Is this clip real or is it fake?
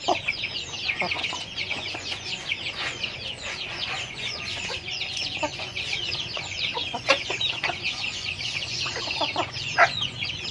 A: fake